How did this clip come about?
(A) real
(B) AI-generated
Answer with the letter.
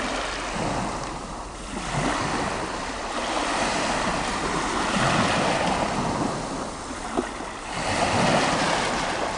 A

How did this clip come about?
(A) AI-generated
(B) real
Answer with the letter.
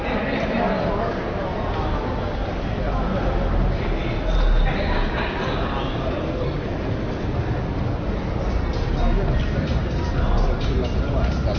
B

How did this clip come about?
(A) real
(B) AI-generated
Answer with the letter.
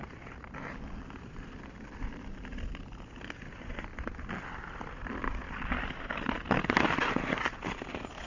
A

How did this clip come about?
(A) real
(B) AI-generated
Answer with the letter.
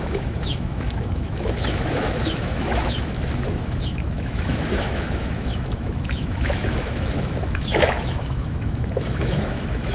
B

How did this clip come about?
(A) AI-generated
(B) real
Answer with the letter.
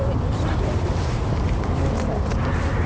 B